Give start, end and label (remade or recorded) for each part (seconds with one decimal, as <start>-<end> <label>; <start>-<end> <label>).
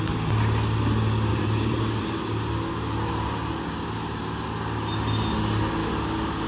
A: 0.0-1.3 recorded; 1.3-2.0 remade; 2.0-6.5 recorded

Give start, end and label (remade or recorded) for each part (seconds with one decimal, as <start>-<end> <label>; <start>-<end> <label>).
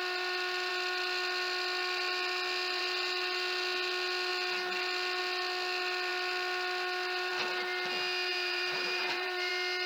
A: 0.0-8.3 recorded; 8.3-9.5 remade; 9.5-9.9 recorded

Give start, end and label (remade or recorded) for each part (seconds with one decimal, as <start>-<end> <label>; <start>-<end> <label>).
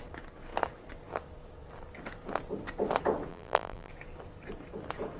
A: 0.0-3.3 recorded; 3.3-3.9 remade; 3.9-5.2 recorded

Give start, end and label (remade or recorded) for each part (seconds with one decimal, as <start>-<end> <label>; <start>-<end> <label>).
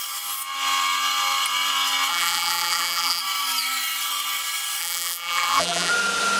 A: 0.0-2.1 recorded; 2.1-3.2 remade; 3.2-4.8 recorded; 4.8-5.9 remade; 5.9-6.4 recorded